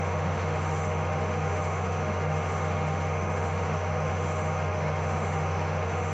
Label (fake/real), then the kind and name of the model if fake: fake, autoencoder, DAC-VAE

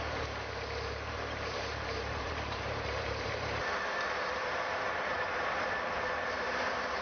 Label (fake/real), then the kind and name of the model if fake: fake, vocoder, BigVGAN v2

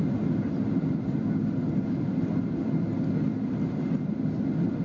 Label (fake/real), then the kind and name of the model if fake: real